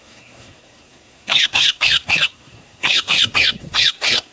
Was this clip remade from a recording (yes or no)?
yes